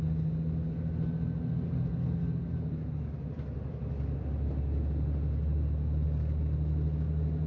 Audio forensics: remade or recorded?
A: recorded